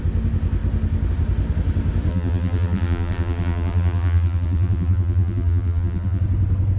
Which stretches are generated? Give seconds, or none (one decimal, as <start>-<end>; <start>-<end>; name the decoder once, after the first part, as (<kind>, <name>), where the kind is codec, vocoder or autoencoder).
2.1-6.2 (vocoder, BigVGAN v2)